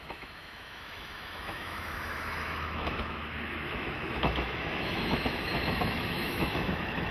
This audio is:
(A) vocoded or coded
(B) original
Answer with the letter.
A